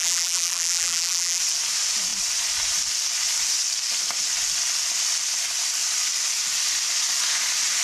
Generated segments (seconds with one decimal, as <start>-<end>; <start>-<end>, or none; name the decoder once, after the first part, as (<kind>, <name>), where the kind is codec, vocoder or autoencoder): 0.0-1.4 (vocoder, BigVGAN v2)